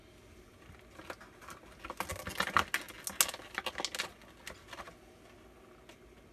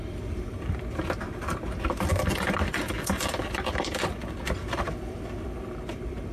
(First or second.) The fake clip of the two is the second